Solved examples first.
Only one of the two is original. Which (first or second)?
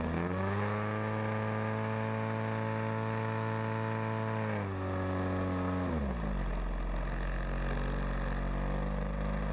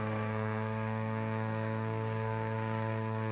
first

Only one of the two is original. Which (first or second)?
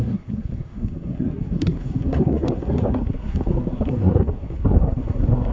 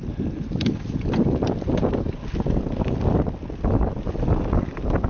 second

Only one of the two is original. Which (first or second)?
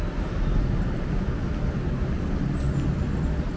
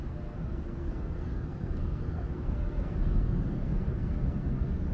first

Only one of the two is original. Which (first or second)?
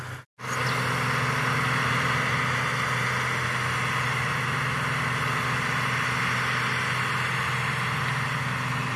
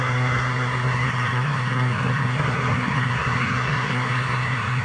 first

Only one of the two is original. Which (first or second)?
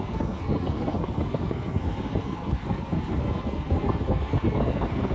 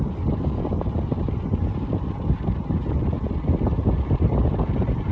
second